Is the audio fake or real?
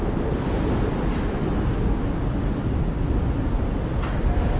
real